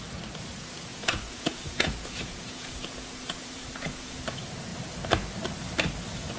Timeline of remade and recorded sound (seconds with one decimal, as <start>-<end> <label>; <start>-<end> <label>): 0.0-0.9 recorded; 0.9-4.2 remade; 4.2-6.4 recorded